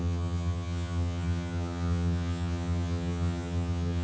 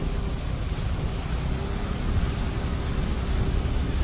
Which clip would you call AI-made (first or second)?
first